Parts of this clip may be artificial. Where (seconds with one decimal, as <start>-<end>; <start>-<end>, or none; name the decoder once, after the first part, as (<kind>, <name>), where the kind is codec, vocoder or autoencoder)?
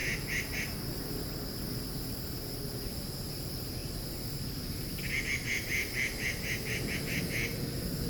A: none